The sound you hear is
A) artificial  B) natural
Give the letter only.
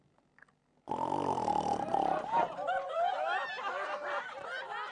B